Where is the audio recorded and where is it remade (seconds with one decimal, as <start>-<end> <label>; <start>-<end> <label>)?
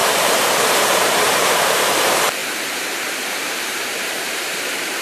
0.0-0.9 recorded; 0.9-5.0 remade